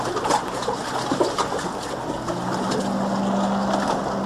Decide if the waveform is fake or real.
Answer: real